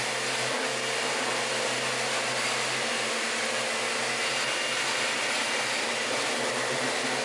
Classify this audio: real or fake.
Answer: real